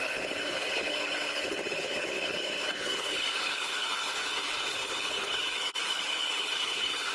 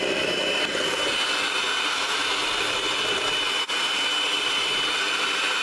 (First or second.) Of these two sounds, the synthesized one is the first